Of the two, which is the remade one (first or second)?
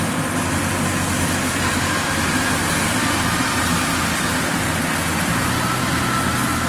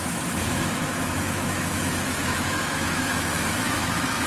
second